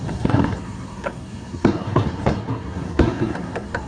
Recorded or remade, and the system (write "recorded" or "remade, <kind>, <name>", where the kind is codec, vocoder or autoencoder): remade, codec, SNAC